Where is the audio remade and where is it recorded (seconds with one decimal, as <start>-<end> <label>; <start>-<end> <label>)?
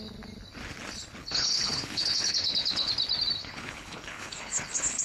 0.0-1.2 recorded; 1.2-2.9 remade; 2.9-3.4 recorded; 3.4-5.0 remade